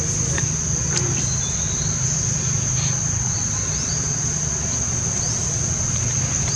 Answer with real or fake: real